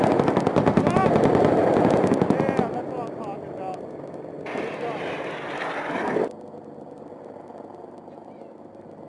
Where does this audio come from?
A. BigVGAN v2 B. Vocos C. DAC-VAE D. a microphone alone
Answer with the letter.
D